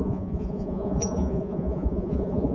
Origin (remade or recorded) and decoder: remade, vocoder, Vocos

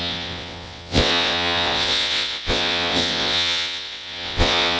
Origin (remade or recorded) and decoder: remade, vocoder, WaveNeXt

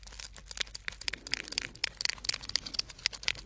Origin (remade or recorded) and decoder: recorded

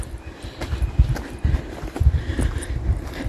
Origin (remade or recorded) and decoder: remade, vocoder, BigVGAN v2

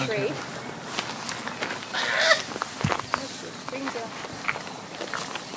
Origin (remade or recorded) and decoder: recorded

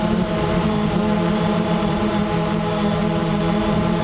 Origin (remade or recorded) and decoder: remade, vocoder, BigVGAN v2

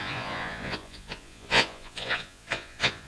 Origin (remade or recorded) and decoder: remade, vocoder, Vocos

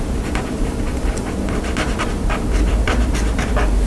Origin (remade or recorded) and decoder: remade, vocoder, BigVGAN v2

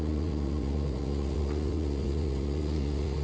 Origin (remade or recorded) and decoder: remade, vocoder, Vocos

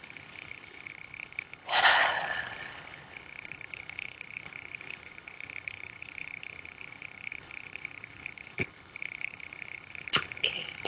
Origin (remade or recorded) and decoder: remade, codec, HILCodec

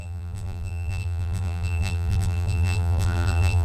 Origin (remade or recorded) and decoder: remade, vocoder, BigVGAN v2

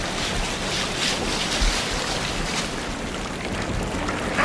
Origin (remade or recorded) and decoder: recorded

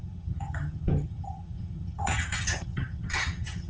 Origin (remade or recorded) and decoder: remade, vocoder, HiFi-GAN